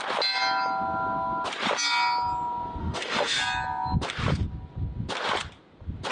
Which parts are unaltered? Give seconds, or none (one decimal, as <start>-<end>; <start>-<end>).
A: 0.0-2.8; 3.4-6.1

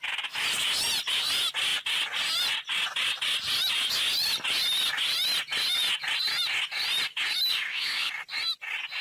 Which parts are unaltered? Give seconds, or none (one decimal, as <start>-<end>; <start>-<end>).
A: 0.0-7.5; 8.1-9.0

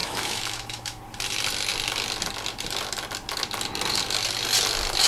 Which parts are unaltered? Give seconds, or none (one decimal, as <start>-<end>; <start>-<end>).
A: 1.0-5.1

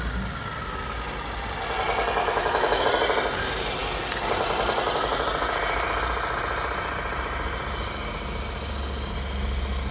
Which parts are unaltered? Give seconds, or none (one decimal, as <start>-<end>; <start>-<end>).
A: 0.0-2.2; 2.8-9.9

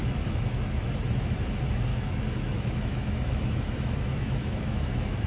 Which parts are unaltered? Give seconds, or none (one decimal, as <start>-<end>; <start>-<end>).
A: 0.9-1.9